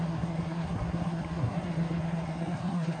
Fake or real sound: fake